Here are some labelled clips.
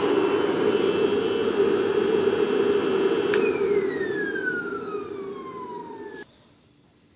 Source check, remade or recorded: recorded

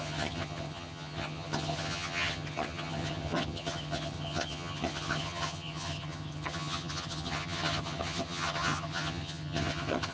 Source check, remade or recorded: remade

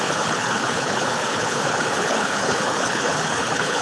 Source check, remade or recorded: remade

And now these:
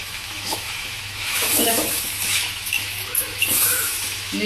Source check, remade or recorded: remade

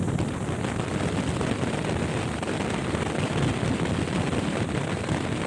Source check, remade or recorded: recorded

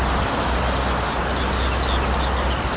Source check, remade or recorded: recorded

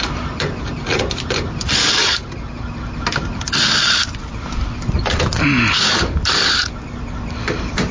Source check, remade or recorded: recorded